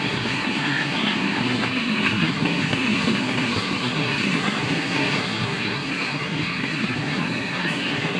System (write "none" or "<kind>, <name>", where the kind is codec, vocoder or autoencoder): codec, SNAC